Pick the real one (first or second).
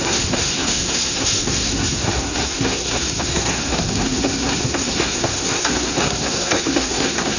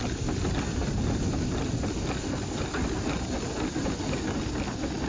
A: second